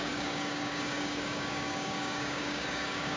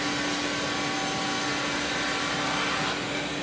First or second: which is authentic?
second